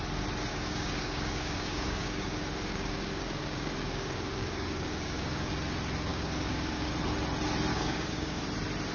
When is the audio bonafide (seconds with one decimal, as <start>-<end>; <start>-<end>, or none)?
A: 0.0-0.5; 5.5-6.1; 6.9-7.7; 8.4-8.9